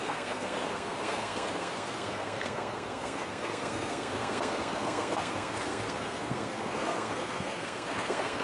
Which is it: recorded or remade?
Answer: remade